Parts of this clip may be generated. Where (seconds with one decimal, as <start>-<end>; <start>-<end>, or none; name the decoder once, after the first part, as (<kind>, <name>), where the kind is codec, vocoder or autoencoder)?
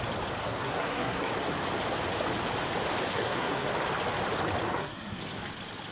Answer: 0.4-1.3 (codec, SNAC); 3.1-3.7; 4.7-5.2